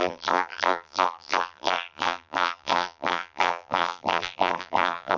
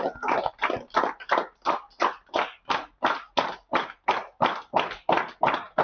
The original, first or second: second